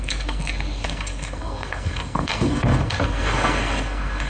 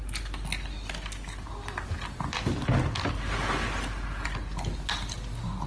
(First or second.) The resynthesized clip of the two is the first